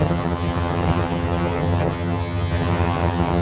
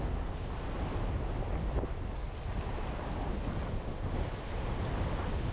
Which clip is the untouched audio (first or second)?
second